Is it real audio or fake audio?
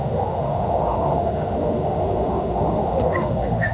fake